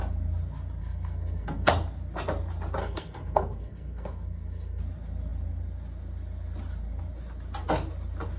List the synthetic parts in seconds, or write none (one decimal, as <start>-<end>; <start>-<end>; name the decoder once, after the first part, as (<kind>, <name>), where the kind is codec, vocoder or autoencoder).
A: 0.8-1.7 (codec, SNAC); 2.8-4.8